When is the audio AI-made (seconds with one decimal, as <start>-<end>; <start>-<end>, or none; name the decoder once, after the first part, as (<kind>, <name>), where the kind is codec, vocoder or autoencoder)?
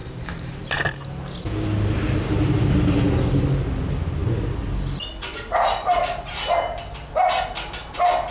0.0-0.8 (vocoder, BigVGAN v2)